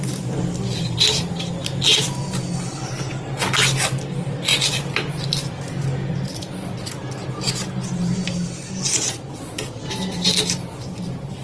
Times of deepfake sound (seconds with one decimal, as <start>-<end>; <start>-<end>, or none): none

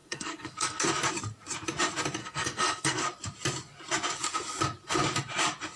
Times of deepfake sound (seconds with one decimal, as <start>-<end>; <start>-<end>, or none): 0.0-0.8; 2.2-3.0

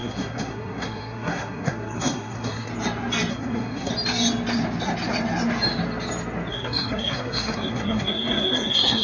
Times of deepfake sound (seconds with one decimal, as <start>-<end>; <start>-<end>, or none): 0.0-2.7; 3.3-3.9; 6.5-9.0